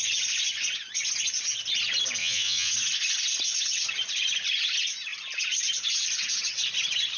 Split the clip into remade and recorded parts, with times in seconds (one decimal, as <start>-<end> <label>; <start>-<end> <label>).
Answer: 0.0-2.2 recorded; 2.2-2.7 remade; 2.7-7.2 recorded